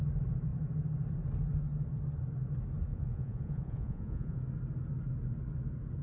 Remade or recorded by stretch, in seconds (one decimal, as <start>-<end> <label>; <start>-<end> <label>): 0.0-2.9 recorded; 2.9-4.4 remade; 4.4-6.0 recorded